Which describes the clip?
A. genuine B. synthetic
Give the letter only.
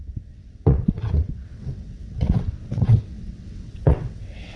B